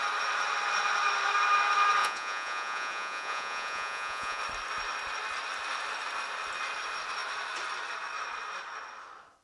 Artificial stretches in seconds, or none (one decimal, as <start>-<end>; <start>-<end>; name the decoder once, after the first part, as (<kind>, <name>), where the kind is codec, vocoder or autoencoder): 2.0-4.4 (vocoder, Vocos)